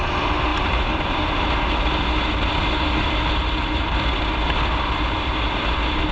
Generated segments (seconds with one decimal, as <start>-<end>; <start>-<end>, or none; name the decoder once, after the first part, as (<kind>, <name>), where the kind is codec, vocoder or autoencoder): none